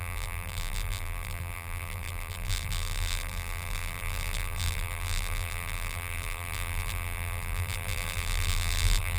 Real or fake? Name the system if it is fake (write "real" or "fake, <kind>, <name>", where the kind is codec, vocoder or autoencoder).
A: fake, vocoder, BigVGAN v2